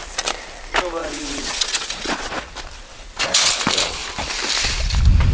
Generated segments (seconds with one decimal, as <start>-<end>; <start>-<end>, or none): 1.0-2.5; 2.9-3.5